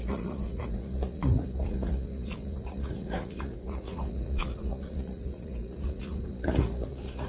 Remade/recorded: remade